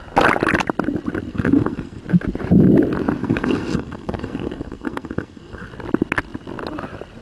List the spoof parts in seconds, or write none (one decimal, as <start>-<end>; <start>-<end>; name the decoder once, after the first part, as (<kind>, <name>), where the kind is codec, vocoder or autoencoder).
1.3-2.0 (codec, SNAC); 3.2-5.7